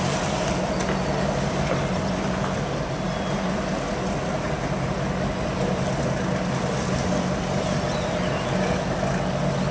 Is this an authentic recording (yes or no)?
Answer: yes